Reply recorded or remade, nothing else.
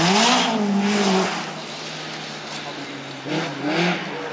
recorded